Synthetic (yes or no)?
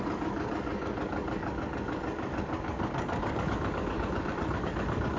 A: yes